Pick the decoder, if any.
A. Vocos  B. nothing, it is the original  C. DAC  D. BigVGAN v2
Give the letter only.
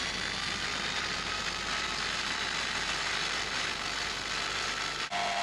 B